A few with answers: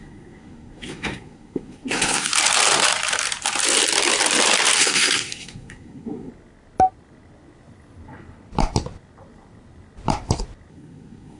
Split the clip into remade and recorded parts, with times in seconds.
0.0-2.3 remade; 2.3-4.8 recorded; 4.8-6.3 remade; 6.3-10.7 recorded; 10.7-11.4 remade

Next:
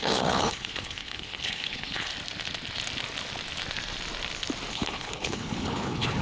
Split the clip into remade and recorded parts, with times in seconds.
0.0-2.1 remade; 2.1-4.7 recorded; 4.7-6.2 remade

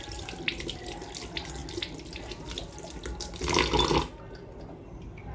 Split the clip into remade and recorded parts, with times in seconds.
0.0-5.3 recorded

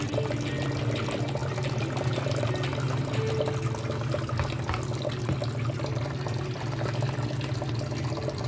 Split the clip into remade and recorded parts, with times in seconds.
0.0-8.5 recorded